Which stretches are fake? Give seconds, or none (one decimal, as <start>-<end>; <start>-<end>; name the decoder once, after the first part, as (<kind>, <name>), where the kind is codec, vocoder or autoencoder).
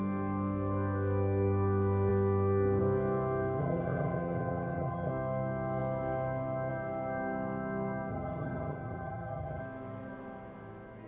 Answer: 3.6-5.1 (vocoder, HiFi-GAN); 8.1-9.6